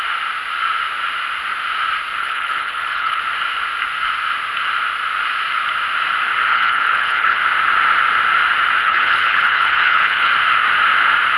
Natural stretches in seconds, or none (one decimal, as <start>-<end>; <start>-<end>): 0.0-2.2; 3.2-6.5; 7.4-8.8; 10.3-11.4